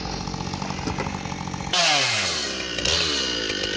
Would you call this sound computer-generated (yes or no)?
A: no